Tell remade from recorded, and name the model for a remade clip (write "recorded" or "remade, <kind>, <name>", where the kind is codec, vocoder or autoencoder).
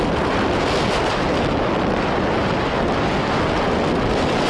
recorded